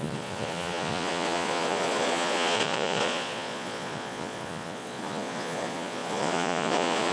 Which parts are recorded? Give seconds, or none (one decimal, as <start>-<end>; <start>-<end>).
none